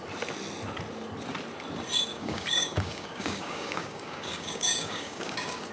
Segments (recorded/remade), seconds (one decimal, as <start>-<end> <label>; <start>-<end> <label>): 0.0-2.1 recorded; 2.1-5.7 remade